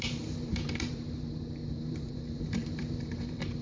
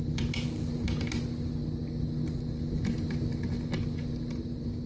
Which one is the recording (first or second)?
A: second